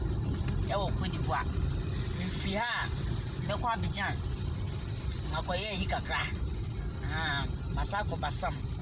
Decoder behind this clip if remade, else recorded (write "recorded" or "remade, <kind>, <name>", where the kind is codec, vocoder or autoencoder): remade, vocoder, BigVGAN v2